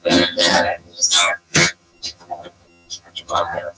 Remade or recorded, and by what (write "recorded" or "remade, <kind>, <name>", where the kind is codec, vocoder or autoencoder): remade, vocoder, HiFi-GAN